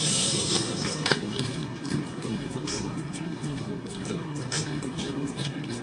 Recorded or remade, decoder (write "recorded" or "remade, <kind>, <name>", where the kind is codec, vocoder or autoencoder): remade, codec, SNAC